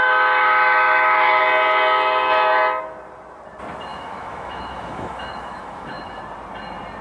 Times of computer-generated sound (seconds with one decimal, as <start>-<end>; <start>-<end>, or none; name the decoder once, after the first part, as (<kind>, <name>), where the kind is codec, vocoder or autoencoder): 0.0-1.4 (autoencoder, DAC-VAE); 3.9-6.2